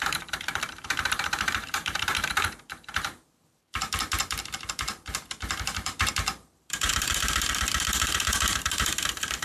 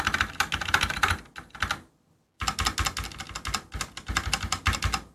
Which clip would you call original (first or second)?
second